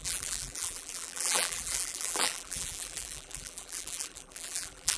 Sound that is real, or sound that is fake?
fake